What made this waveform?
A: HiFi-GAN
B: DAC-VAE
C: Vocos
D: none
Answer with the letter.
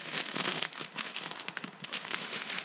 B